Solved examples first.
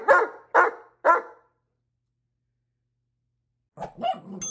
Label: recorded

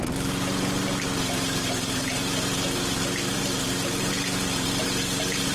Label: remade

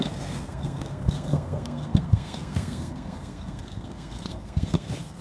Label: remade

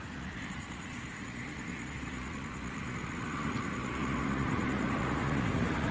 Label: remade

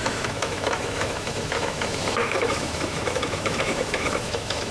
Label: remade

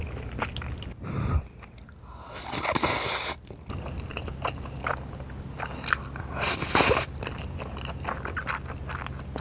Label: recorded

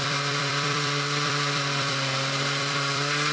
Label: remade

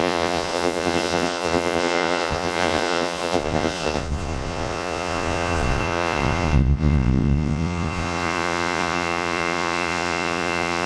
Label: remade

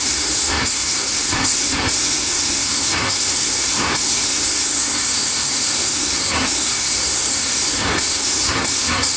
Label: remade